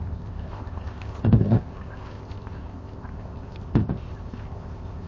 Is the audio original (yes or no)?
no